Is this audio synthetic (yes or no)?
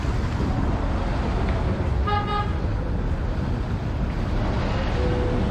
no